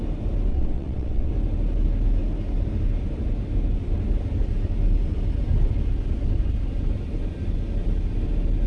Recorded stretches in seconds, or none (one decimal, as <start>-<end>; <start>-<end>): 0.0-0.5; 1.3-8.7